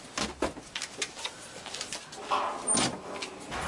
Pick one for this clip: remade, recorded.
recorded